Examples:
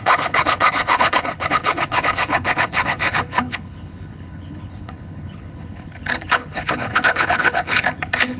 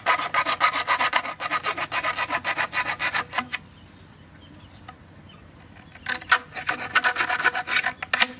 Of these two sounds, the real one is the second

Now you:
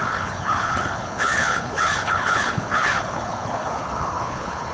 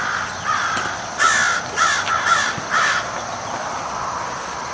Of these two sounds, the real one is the second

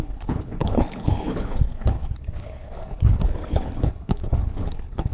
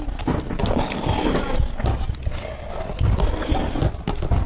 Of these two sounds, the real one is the second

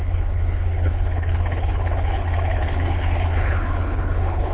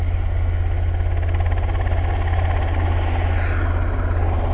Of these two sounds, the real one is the second